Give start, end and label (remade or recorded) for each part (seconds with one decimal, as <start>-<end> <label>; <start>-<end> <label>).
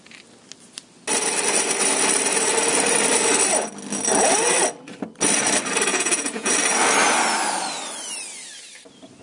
0.0-5.9 recorded; 5.9-6.5 remade; 6.5-9.2 recorded